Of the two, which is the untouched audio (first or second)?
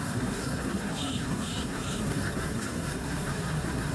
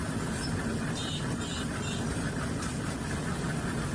second